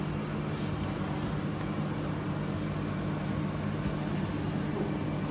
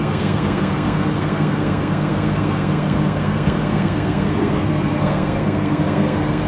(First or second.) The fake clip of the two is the second